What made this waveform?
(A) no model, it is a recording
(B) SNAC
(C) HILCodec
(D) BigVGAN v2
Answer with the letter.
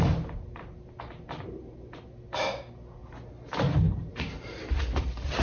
A